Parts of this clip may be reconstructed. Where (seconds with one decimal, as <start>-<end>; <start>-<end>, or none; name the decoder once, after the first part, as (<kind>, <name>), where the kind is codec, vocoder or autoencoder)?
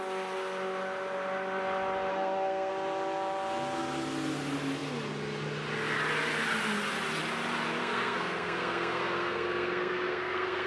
2.1-2.7 (codec, SNAC); 7.8-10.7